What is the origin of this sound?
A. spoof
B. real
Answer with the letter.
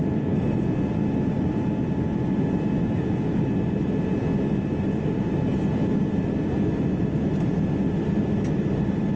B